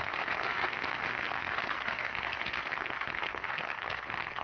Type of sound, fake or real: fake